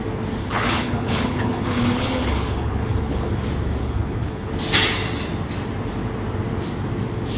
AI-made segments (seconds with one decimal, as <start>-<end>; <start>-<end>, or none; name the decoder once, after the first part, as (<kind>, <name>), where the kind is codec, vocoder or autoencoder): 0.4-3.3 (codec, HILCodec); 3.8-4.5